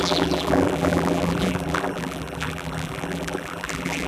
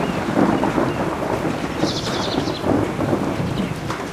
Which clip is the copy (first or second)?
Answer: first